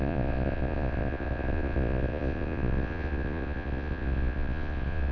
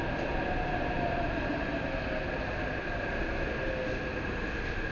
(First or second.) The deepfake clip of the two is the first